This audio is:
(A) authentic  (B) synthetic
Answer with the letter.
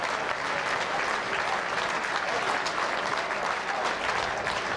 A